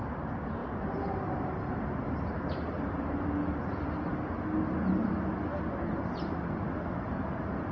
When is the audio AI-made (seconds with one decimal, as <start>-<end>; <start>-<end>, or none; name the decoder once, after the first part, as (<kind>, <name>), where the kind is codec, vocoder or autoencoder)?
none

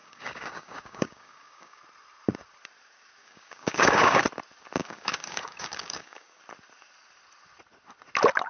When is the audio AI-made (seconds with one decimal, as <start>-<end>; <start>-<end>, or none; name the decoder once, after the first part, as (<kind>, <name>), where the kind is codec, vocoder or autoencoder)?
0.0-1.8 (codec, DAC); 3.2-4.2; 4.8-6.4

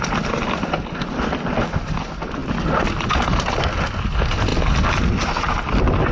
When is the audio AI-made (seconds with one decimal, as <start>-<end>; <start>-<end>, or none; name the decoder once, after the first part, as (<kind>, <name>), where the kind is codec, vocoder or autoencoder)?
none

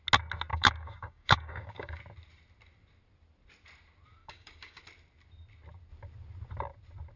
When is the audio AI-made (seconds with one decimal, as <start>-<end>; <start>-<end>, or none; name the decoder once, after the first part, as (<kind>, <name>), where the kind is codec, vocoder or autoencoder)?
0.5-2.0 (codec, DAC); 4.2-4.8

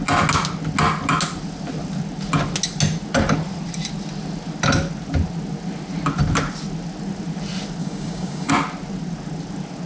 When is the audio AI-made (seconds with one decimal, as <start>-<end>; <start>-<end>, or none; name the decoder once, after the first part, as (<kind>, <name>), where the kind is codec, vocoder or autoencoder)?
7.8-8.5 (codec, DAC)

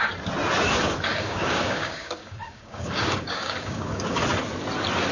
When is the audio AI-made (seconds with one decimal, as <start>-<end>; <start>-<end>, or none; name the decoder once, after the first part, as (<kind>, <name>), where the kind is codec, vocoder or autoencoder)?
1.1-4.2 (codec, DAC)

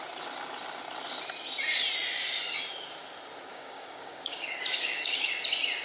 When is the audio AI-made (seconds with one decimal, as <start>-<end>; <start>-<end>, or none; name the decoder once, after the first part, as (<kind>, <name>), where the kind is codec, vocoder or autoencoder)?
3.5-5.3 (codec, DAC)

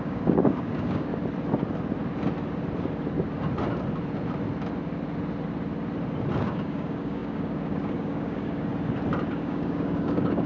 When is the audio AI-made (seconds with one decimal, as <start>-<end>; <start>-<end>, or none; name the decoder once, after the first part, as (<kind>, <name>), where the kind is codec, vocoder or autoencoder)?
0.0-1.1 (codec, DAC); 6.4-8.7; 9.3-10.5